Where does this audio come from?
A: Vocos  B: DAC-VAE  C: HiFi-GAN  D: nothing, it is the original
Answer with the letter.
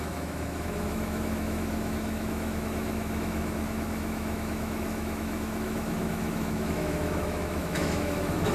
B